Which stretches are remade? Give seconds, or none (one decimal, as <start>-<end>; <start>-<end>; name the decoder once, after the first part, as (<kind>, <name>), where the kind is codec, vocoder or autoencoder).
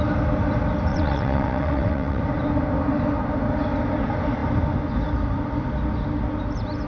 0.9-2.2 (vocoder, WaveNeXt)